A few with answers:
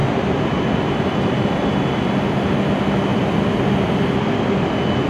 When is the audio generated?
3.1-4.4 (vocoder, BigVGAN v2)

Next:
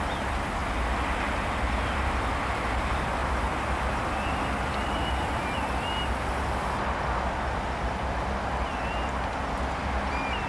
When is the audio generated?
none

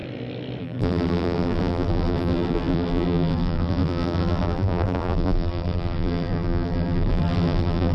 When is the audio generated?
0.6-7.9 (vocoder, BigVGAN v2)

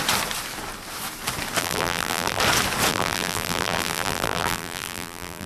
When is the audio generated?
1.6-2.4 (vocoder, BigVGAN v2); 2.9-5.5